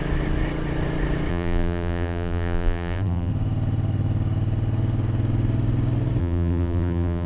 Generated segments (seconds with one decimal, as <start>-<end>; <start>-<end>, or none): 1.3-3.3; 6.2-7.3